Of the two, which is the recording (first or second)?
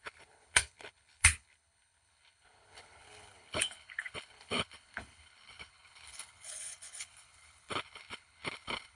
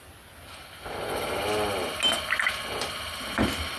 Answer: second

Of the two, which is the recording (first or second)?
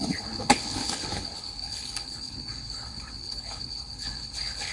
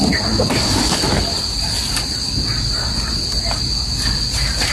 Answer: second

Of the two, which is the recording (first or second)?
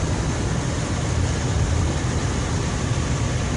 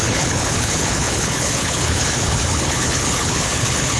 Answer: first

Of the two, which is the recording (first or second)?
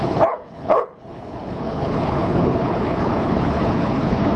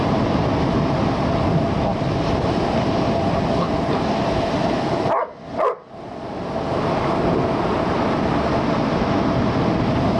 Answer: second